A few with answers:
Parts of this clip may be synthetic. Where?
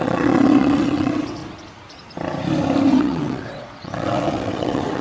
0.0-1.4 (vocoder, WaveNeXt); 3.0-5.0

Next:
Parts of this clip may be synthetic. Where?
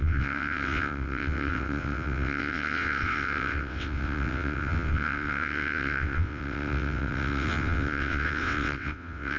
0.0-9.4 (vocoder, WaveNeXt)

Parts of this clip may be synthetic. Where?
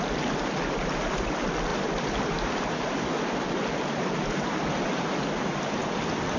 none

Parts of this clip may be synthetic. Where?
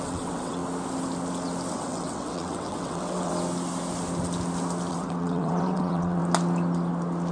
0.0-0.6 (vocoder, WaveNeXt); 1.7-3.3; 4.9-6.2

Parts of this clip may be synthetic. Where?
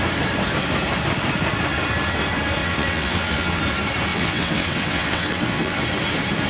2.6-3.6 (vocoder, WaveNeXt); 4.1-5.8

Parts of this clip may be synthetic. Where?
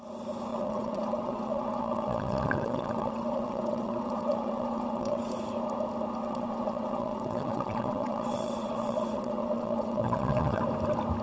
0.5-5.3 (vocoder, WaveNeXt); 6.2-10.6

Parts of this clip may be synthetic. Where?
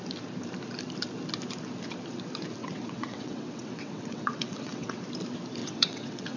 2.6-5.0 (vocoder, WaveNeXt); 5.6-6.4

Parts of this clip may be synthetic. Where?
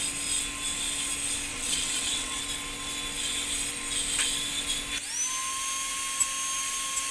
1.5-2.4 (vocoder, WaveNeXt)